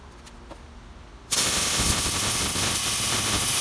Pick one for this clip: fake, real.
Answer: real